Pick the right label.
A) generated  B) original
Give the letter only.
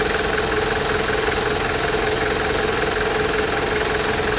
B